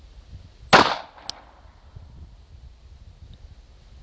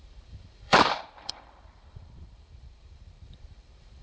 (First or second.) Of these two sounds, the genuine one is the first